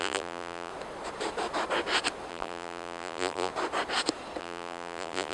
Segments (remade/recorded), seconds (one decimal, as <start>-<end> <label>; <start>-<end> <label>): 0.0-0.7 remade; 0.7-2.3 recorded; 2.3-3.5 remade; 3.5-4.4 recorded; 4.4-5.3 remade